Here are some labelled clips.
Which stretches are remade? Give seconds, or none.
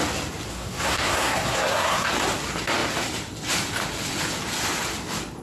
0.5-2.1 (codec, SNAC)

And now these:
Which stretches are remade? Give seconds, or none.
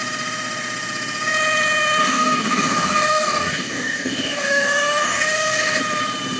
2.0-5.8 (codec, DAC)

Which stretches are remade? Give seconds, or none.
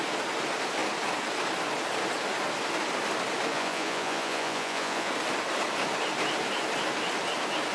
3.5-5.1 (vocoder, Vocos)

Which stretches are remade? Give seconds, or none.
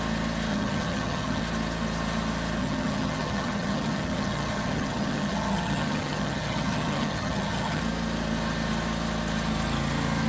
0.5-1.4 (vocoder, HiFi-GAN); 2.6-7.8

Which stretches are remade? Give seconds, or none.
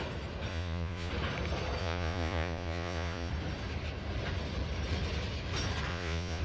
0.5-1.1 (vocoder, Vocos); 1.8-3.3; 5.9-6.4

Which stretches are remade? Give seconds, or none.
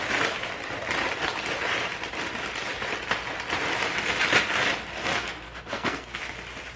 5.0-6.2 (codec, SNAC)